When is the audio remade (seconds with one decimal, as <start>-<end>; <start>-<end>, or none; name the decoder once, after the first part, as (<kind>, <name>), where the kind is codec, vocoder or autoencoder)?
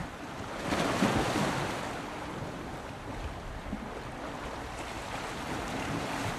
none